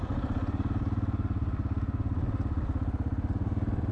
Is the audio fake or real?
real